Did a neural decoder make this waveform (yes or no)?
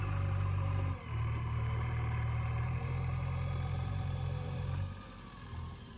yes